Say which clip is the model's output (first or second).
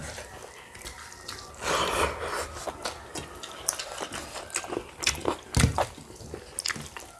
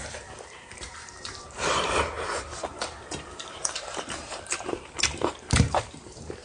second